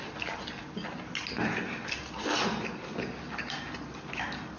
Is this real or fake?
real